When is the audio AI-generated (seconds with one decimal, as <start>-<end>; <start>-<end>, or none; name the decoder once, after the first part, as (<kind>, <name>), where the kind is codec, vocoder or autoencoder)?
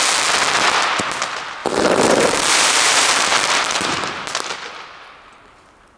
1.6-4.3 (vocoder, BigVGAN v2)